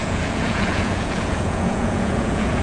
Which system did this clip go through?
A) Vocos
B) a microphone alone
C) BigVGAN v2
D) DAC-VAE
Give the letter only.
A